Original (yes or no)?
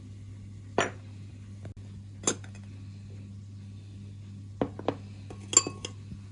yes